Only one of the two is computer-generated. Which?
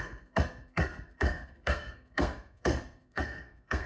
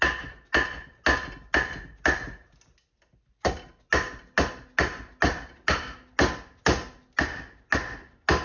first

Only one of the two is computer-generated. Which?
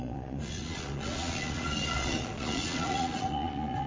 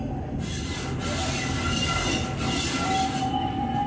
first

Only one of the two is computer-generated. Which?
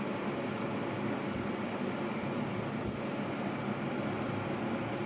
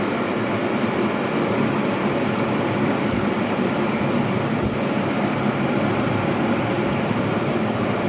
second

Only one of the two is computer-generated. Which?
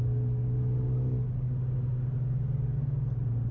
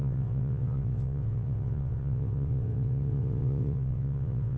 second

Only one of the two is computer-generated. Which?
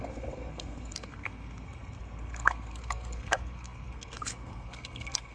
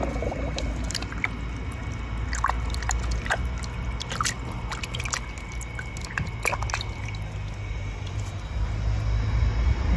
first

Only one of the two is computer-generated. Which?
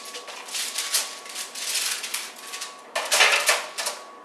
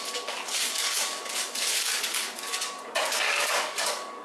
second